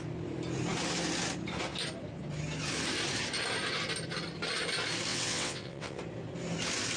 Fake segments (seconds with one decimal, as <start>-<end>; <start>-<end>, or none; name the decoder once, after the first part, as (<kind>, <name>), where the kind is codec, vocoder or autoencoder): 5.1-6.0 (vocoder, WaveNeXt)

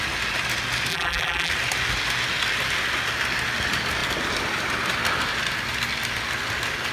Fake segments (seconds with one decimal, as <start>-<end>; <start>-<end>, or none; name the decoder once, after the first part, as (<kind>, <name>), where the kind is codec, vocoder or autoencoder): 0.9-1.5 (vocoder, BigVGAN v2)

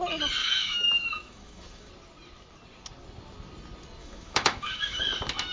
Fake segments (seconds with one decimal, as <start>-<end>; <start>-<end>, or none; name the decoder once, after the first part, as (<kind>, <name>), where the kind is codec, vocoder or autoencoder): 0.4-1.9 (autoencoder, DAC-VAE); 4.0-5.0

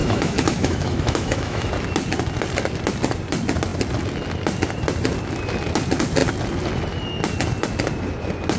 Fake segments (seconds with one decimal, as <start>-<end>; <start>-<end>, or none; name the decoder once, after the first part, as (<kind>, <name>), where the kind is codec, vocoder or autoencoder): 0.0-1.7 (autoencoder, DAC-VAE)

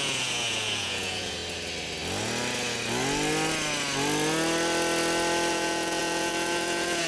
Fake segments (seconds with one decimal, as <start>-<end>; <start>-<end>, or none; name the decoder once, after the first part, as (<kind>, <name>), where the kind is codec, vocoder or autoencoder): 0.0-1.4 (vocoder, Vocos); 5.5-7.1

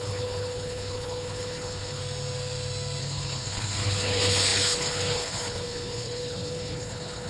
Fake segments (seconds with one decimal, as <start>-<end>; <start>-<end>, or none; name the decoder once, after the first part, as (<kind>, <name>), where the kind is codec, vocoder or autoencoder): 0.0-2.0 (codec, HILCodec); 3.0-7.3

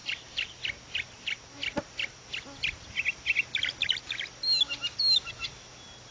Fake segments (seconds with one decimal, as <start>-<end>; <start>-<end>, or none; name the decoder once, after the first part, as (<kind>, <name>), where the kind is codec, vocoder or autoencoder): 0.0-0.6 (vocoder, BigVGAN v2)